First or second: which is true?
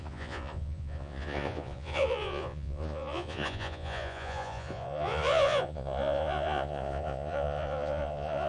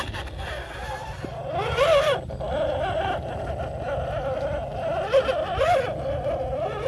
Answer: second